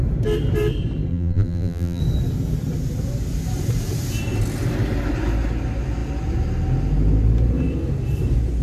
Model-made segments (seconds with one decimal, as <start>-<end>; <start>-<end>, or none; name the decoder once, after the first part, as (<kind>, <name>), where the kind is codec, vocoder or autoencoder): 1.1-2.0 (vocoder, BigVGAN v2)